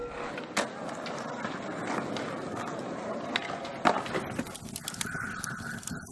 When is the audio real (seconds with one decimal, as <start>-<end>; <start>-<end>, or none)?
0.0-6.1